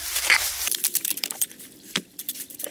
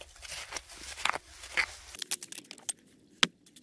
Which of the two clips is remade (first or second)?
first